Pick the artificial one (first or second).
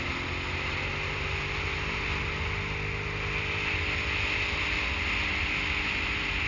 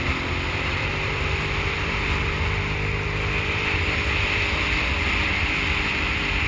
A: second